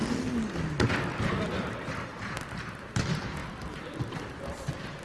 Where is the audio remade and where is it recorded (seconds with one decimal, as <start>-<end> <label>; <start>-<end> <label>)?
0.0-1.5 recorded; 1.5-5.0 remade